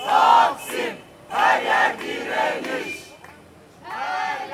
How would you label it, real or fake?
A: real